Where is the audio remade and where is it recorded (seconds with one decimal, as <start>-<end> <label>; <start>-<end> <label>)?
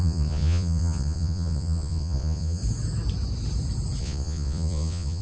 0.0-2.6 remade; 2.6-4.0 recorded; 4.0-5.2 remade